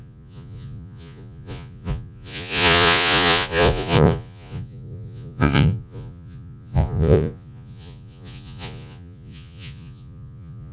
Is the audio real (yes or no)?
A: no